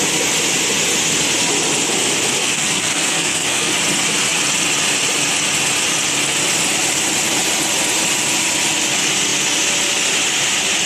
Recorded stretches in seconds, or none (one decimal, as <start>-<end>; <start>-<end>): 0.0-2.4; 3.7-10.9